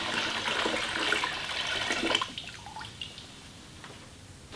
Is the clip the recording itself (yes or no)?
yes